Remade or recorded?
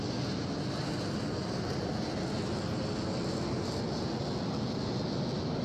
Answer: recorded